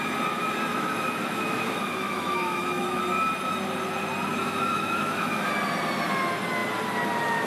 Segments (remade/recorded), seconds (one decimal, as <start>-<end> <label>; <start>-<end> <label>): 0.0-0.7 recorded; 0.7-3.0 remade; 3.0-4.3 recorded; 4.3-5.5 remade; 5.5-7.5 recorded